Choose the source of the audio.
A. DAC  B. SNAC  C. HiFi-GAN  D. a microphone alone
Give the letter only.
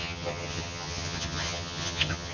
C